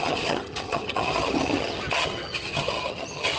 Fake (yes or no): yes